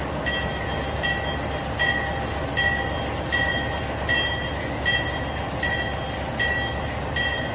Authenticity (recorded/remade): recorded